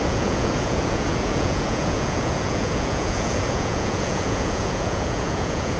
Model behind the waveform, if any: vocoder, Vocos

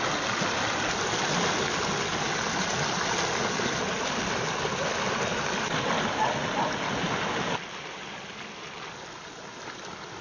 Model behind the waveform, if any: none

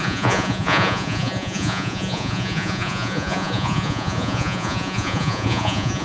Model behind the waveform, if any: vocoder, Vocos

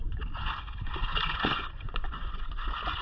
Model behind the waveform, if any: vocoder, Vocos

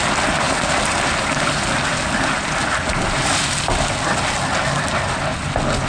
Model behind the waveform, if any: none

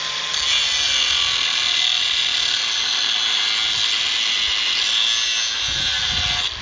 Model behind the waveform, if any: none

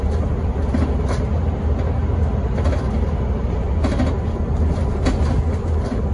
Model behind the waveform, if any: none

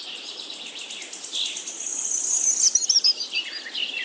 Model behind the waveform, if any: none